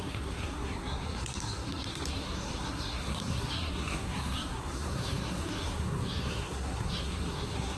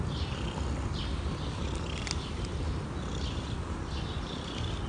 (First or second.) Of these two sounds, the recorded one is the second